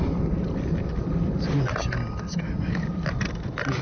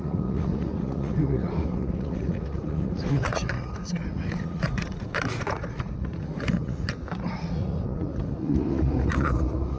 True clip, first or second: first